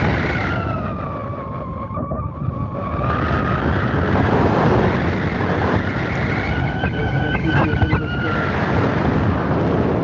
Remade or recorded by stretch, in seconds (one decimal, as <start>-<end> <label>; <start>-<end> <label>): 0.0-7.0 recorded; 7.0-7.5 remade; 7.5-10.0 recorded